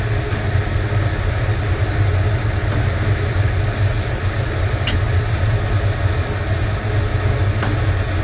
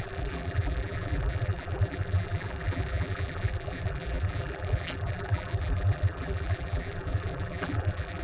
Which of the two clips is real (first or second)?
first